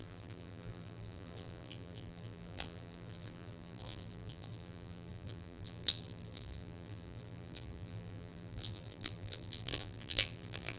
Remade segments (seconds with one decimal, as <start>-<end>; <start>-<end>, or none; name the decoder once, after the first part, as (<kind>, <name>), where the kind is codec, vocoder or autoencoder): 0.0-10.8 (vocoder, BigVGAN v2)

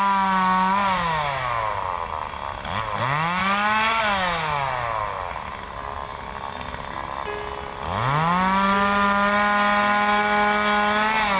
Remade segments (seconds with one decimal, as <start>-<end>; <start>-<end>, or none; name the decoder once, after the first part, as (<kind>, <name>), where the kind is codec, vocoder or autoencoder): 3.4-4.0 (vocoder, BigVGAN v2)

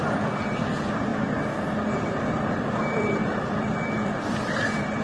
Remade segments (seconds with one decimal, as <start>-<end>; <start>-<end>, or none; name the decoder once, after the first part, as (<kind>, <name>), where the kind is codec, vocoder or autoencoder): 0.0-1.1 (vocoder, BigVGAN v2); 1.9-5.0

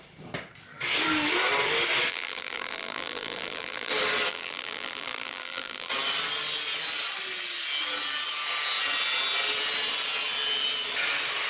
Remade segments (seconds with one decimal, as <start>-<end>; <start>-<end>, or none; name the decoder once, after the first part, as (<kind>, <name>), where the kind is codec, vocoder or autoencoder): 2.1-3.9 (vocoder, BigVGAN v2); 4.3-5.9

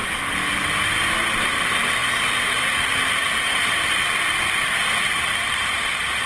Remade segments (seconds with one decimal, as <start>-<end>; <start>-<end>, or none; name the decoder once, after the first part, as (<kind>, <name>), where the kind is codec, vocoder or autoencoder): 1.4-2.0 (vocoder, BigVGAN v2); 5.0-6.3

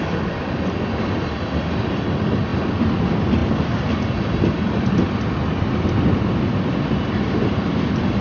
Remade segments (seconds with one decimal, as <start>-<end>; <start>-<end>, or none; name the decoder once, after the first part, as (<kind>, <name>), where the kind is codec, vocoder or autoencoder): none